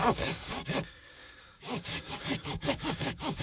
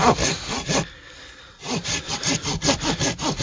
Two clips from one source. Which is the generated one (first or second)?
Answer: first